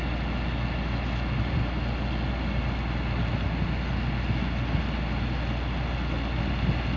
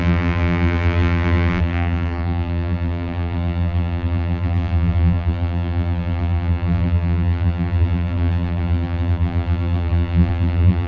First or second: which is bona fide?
first